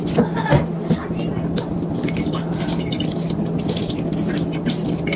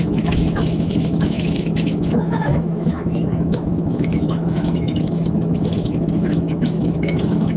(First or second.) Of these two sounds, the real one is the first